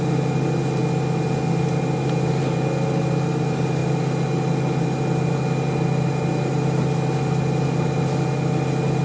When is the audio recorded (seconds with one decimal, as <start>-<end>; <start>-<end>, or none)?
0.0-9.0